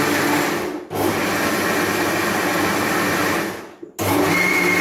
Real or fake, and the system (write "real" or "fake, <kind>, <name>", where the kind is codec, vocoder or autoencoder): real